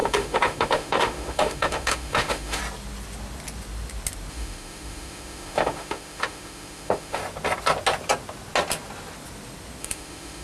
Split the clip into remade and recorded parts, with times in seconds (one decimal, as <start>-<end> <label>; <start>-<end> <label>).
0.0-2.6 remade; 2.6-4.3 recorded; 4.3-7.2 remade; 7.2-9.8 recorded; 9.8-10.4 remade